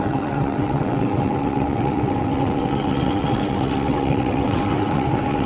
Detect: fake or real fake